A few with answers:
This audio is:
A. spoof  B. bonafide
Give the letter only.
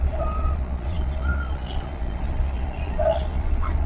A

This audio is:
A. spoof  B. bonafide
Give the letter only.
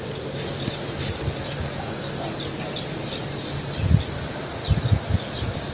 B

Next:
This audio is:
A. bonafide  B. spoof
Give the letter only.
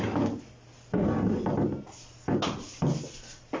A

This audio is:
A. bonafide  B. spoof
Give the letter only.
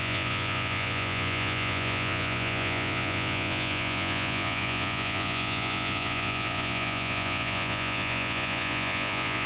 B